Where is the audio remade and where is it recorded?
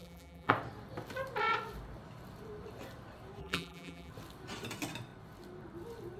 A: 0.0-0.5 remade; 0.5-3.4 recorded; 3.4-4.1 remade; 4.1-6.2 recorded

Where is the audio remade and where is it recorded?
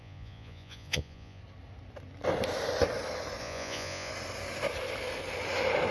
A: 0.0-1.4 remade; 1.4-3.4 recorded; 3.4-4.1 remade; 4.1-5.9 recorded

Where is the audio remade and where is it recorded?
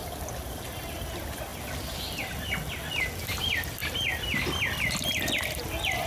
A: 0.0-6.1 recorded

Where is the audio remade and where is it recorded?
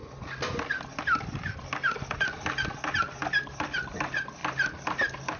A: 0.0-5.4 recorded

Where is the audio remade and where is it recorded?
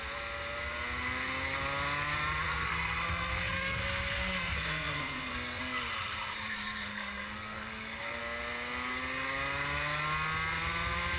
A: 0.0-2.5 recorded; 2.5-5.6 remade; 5.6-6.9 recorded; 6.9-8.2 remade; 8.2-11.2 recorded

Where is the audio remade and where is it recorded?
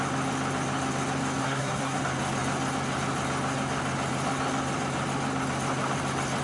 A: 0.0-1.4 recorded; 1.4-2.0 remade; 2.0-6.4 recorded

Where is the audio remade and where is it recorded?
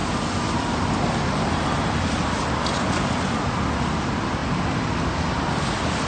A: 0.0-6.1 recorded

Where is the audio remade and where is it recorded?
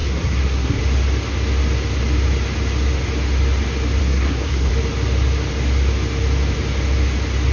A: 0.0-0.8 remade; 0.8-4.0 recorded; 4.0-4.7 remade; 4.7-7.5 recorded